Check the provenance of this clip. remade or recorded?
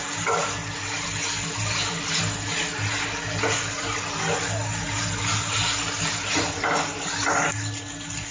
recorded